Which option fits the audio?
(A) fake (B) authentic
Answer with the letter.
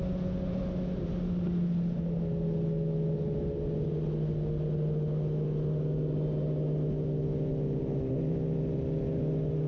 B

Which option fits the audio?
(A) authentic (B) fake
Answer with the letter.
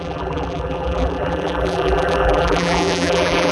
B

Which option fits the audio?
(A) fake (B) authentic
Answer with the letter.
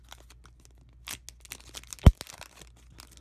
B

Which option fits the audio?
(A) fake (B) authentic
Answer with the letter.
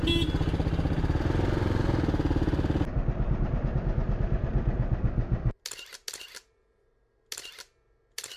B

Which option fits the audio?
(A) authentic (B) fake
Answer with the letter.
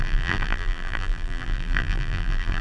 B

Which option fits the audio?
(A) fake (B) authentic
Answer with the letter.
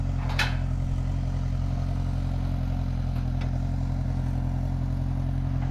B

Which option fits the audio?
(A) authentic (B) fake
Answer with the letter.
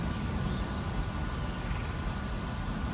A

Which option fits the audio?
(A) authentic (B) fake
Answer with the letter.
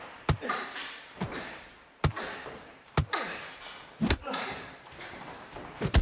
B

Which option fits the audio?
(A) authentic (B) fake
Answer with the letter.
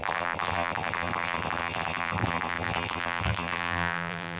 B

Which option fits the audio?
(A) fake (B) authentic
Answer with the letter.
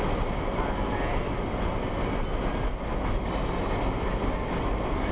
B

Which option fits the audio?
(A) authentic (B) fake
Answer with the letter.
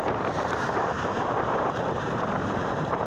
B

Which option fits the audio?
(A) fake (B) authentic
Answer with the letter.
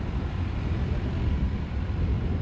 A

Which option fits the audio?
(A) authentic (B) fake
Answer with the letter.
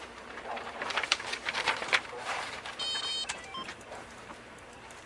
B